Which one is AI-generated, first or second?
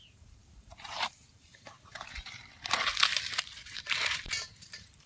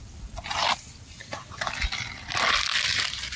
first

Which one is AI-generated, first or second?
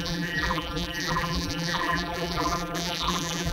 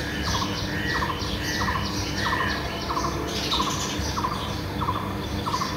first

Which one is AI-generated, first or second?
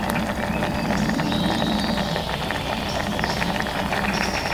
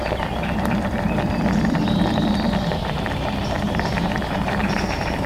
second